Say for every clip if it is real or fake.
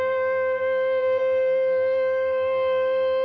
fake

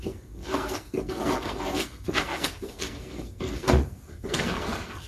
fake